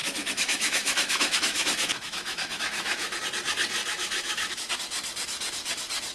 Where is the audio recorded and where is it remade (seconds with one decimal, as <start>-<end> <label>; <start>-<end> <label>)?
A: 0.0-3.2 remade; 3.2-3.8 recorded; 3.8-4.7 remade; 4.7-6.1 recorded